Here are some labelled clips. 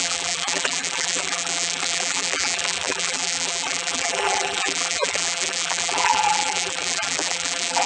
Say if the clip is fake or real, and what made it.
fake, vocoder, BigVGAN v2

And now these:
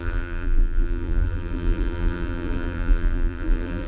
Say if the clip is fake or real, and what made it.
fake, vocoder, BigVGAN v2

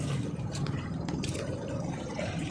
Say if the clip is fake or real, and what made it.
fake, vocoder, BigVGAN v2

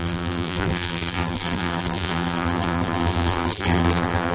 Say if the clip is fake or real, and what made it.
fake, vocoder, BigVGAN v2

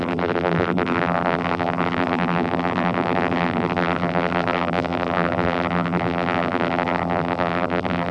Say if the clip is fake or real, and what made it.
fake, vocoder, BigVGAN v2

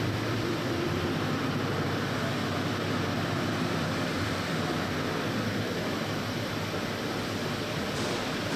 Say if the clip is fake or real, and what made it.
fake, vocoder, BigVGAN v2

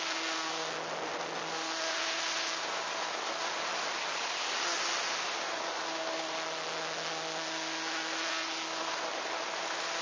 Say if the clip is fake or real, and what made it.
real